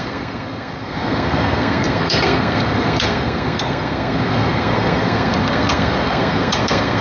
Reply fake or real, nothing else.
fake